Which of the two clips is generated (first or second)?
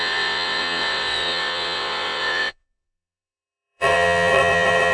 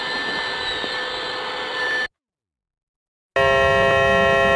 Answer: first